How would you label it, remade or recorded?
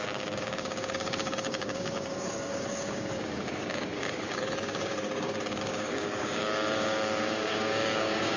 remade